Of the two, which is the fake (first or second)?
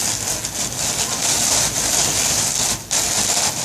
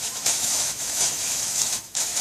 second